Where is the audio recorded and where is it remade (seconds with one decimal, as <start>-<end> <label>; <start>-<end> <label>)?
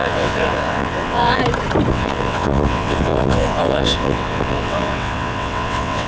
0.0-1.4 remade; 1.4-1.9 recorded; 1.9-6.1 remade